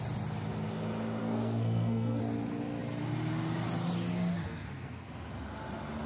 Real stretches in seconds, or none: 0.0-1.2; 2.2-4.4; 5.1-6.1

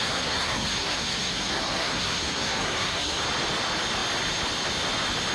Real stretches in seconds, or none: 3.2-5.3